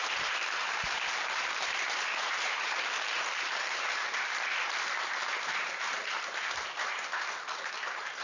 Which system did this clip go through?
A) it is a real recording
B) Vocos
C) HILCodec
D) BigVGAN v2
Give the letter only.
D